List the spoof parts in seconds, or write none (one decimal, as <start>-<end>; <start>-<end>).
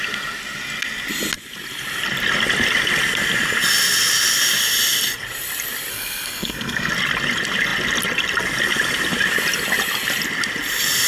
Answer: 5.9-6.9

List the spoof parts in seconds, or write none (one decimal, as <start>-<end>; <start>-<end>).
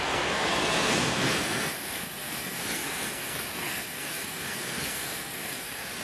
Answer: 0.0-6.0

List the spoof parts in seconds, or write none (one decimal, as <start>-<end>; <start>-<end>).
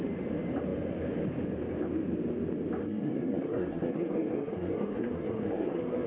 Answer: 2.8-6.1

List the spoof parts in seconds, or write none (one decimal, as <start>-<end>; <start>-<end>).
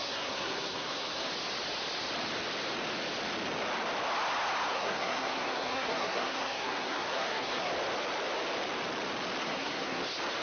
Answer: 0.0-1.3; 4.7-7.7; 9.4-10.0